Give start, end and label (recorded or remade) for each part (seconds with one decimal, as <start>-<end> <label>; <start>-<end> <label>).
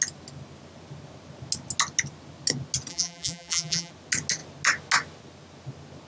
0.0-2.9 recorded; 2.9-3.9 remade; 3.9-6.1 recorded